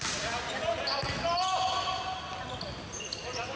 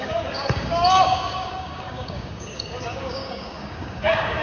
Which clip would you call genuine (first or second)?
first